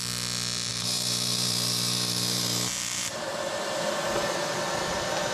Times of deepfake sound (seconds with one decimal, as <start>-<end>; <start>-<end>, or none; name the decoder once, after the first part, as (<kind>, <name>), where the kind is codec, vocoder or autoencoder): 0.7-3.9 (vocoder, BigVGAN v2)